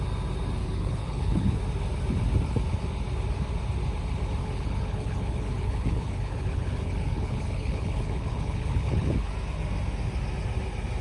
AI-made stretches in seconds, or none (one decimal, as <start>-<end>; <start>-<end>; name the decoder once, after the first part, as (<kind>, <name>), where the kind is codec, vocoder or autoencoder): 0.6-1.6 (codec, HILCodec); 4.4-9.3